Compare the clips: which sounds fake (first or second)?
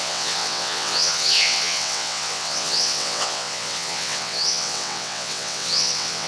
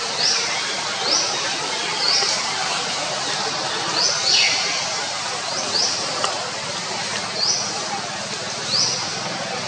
first